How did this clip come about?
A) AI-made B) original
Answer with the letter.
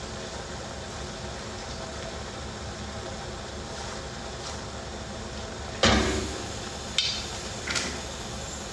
B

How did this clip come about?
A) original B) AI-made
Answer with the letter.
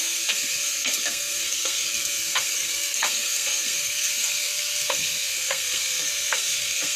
B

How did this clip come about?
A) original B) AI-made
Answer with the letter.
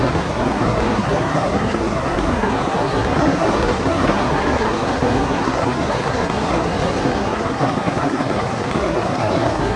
B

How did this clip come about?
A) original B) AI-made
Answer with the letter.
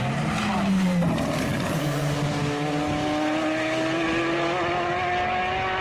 A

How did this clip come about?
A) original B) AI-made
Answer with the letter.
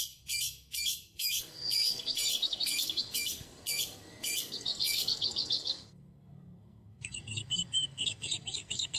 B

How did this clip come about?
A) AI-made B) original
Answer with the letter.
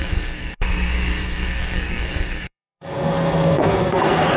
A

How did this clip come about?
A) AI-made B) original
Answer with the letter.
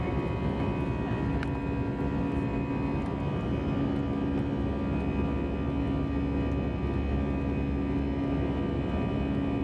B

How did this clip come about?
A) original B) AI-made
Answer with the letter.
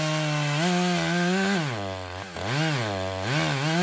A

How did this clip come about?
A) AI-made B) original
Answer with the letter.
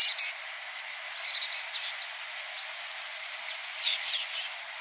B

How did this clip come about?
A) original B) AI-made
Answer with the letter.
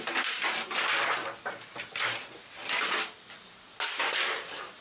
A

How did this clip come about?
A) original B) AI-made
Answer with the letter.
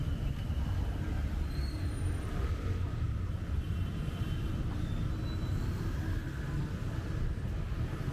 A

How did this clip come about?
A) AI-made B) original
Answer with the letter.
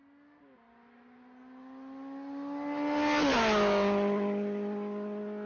B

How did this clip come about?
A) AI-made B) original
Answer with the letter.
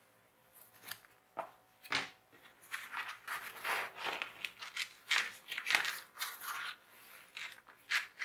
B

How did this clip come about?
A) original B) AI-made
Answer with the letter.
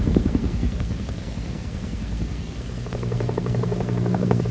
B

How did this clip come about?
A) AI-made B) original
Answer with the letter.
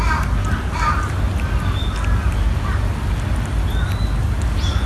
B